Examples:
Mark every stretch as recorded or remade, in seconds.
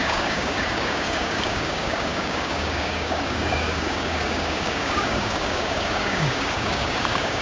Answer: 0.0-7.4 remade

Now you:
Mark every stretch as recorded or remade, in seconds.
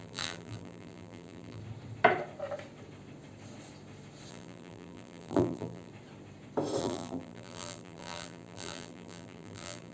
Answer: 0.0-1.6 remade; 1.6-4.3 recorded; 4.3-5.9 remade; 5.9-6.8 recorded; 6.8-9.9 remade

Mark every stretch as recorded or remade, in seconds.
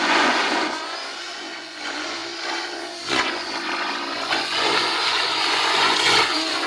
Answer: 0.0-6.7 remade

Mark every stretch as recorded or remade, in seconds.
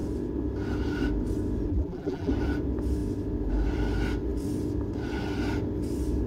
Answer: 0.0-1.7 recorded; 1.7-2.3 remade; 2.3-6.3 recorded